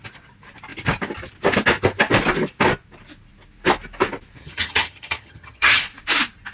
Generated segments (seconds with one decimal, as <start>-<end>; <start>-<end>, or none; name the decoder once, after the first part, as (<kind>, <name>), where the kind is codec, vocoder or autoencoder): 4.4-5.8 (vocoder, HiFi-GAN)